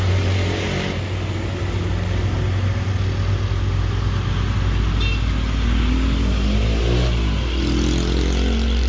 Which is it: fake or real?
real